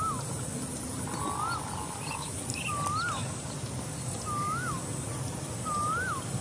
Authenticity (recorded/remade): recorded